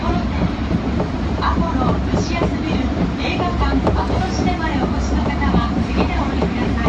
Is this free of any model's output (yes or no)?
no